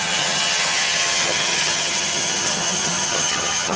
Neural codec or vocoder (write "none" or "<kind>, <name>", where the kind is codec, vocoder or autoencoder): vocoder, HiFi-GAN